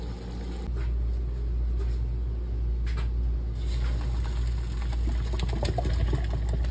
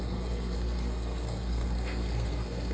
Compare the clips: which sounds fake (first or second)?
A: second